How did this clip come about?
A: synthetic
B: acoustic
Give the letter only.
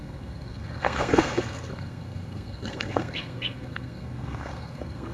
A